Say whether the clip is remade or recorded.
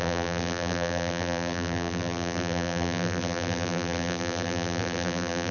remade